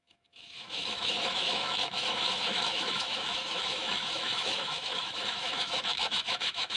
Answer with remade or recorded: remade